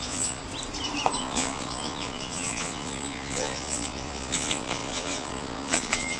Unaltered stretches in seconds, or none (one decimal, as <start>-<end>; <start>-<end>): 0.4-1.2

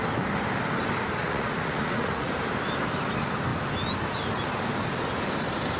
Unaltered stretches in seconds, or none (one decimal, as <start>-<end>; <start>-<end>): 0.0-1.2; 2.4-5.8

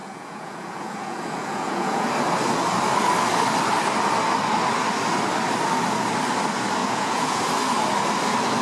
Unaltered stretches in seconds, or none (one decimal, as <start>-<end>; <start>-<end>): 2.1-6.8; 7.4-8.6

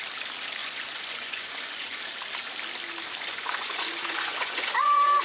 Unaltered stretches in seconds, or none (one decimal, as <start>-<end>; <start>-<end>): 0.0-0.6; 2.0-3.3

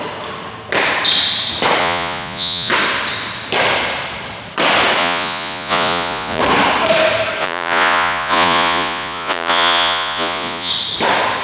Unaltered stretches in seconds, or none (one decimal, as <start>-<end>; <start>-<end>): 0.0-1.8; 2.7-5.0; 6.4-7.4; 10.7-11.4

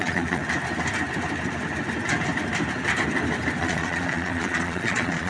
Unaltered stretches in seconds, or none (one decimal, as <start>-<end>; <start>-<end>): 0.4-3.6

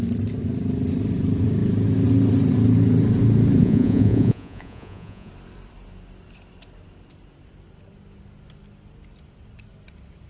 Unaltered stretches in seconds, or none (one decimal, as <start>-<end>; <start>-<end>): 0.0-3.6; 5.3-10.3